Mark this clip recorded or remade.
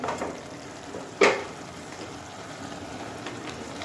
remade